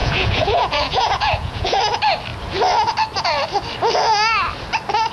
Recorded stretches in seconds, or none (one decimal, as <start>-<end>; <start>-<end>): 1.8-5.1